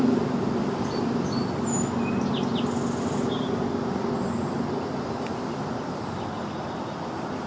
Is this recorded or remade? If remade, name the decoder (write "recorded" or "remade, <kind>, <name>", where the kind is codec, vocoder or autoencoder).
recorded